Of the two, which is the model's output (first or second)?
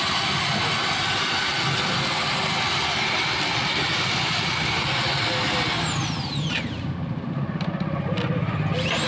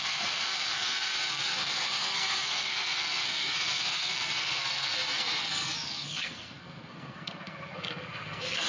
second